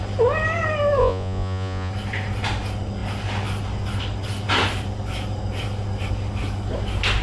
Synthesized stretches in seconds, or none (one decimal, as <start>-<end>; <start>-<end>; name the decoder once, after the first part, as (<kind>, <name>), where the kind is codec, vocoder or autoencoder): 1.0-1.9 (vocoder, Vocos)

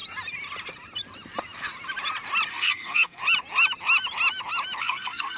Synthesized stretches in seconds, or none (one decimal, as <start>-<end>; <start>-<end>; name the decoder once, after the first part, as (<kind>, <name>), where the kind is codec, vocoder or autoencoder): 2.5-3.2 (codec, SNAC); 4.8-5.4

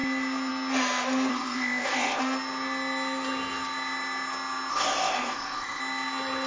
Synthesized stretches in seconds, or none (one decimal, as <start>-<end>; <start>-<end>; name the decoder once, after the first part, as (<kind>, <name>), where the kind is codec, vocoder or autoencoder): 1.3-2.2 (codec, ZipCodec); 4.7-5.8

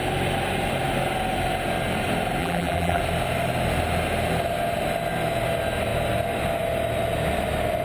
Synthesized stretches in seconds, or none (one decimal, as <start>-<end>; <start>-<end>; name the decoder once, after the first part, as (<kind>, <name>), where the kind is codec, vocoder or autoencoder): 2.4-3.0 (vocoder, BigVGAN v2)

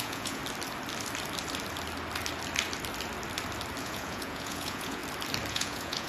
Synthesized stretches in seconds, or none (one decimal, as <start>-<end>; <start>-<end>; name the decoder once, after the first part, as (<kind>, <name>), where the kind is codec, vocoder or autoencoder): 0.0-0.4 (vocoder, Vocos); 3.8-5.0; 5.5-6.1

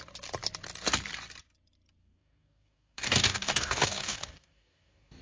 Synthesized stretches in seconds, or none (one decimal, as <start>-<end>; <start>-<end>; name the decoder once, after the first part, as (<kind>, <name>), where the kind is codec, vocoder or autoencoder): 2.0-5.2 (codec, DAC)

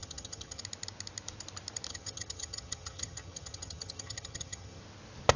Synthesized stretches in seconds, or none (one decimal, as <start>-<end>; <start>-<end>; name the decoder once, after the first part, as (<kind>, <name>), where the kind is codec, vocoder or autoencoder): 0.0-0.6 (vocoder, HiFi-GAN); 1.9-4.8